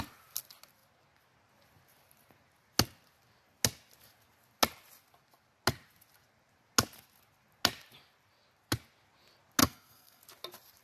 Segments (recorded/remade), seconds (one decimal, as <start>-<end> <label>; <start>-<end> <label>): 0.0-9.6 recorded; 9.6-10.2 remade; 10.2-10.8 recorded